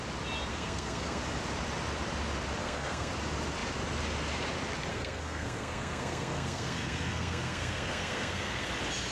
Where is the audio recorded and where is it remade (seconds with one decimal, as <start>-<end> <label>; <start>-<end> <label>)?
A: 0.0-0.5 recorded; 0.5-1.2 remade; 1.2-2.6 recorded; 2.6-3.1 remade; 3.1-4.9 recorded; 4.9-8.7 remade; 8.7-9.1 recorded